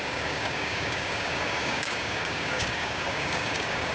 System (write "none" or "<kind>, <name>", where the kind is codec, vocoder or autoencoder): codec, DAC